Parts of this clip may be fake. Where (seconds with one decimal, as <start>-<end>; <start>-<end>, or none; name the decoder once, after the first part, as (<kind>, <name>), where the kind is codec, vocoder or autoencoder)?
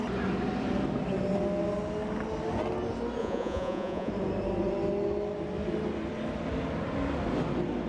3.2-4.1 (vocoder, Vocos)